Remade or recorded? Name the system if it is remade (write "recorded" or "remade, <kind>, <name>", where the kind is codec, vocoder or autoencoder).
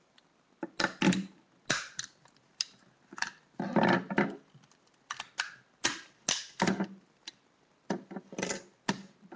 recorded